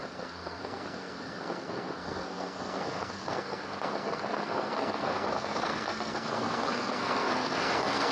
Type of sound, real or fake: fake